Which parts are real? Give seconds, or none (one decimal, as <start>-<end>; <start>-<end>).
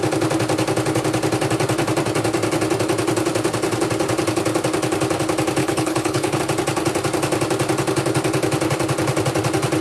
0.0-5.6; 6.4-9.8